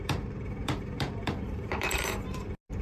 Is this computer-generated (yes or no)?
yes